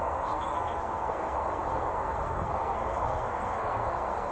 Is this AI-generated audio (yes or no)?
yes